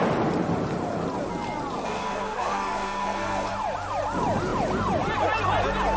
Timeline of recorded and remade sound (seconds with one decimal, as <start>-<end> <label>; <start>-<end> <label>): 0.0-1.8 recorded; 1.8-3.5 remade; 3.5-6.0 recorded